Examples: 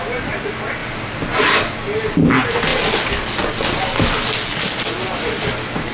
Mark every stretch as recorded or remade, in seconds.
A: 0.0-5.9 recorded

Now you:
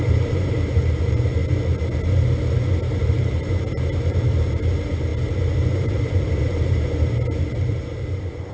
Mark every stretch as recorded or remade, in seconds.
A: 0.0-1.4 remade; 1.4-2.9 recorded; 2.9-5.1 remade; 5.1-5.7 recorded; 5.7-8.5 remade

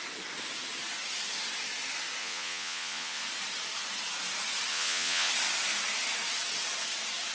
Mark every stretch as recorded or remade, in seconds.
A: 0.0-2.2 recorded; 2.2-3.2 remade; 3.2-4.7 recorded; 4.7-5.3 remade; 5.3-7.3 recorded

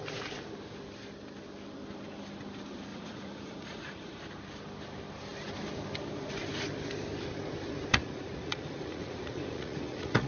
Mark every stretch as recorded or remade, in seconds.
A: 0.0-2.9 recorded; 2.9-4.2 remade; 4.2-7.9 recorded; 7.9-10.3 remade

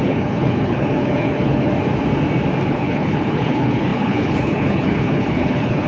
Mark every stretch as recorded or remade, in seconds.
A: 0.0-1.7 remade; 1.7-2.7 recorded; 2.7-5.9 remade

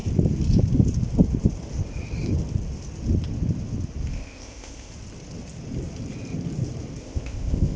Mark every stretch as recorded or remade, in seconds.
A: 0.0-4.1 recorded; 4.1-4.9 remade; 4.9-7.0 recorded; 7.0-7.8 remade